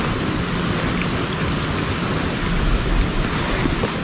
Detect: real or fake real